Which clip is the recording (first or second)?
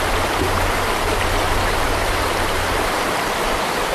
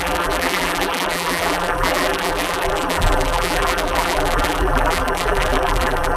first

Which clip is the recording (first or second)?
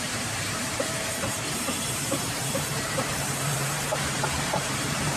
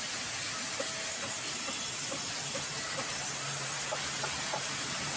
second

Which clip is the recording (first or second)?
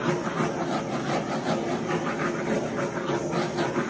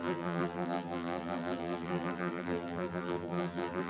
first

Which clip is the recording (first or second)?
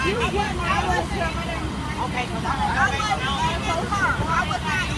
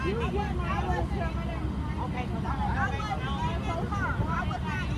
second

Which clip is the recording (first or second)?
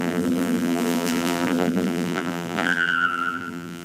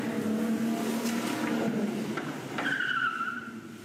second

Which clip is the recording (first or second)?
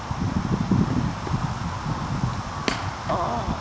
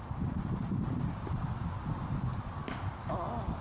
first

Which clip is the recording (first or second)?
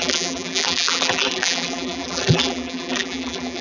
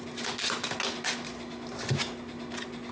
second